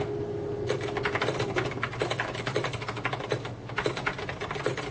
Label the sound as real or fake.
real